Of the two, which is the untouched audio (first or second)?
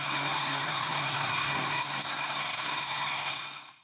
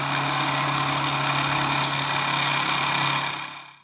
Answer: second